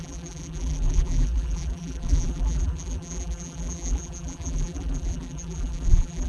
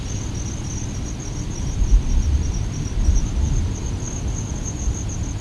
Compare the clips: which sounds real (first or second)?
second